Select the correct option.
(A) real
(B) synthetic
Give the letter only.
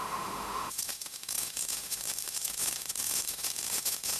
B